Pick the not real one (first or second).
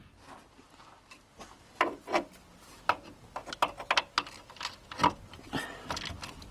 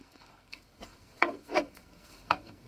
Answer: second